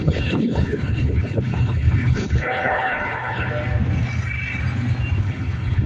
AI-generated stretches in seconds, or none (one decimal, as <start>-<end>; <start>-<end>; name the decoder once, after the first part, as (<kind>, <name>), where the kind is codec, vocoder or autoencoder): 0.0-3.5 (codec, HILCodec); 5.2-5.9